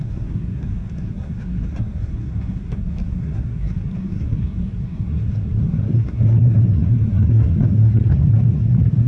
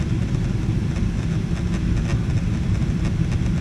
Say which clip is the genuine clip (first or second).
second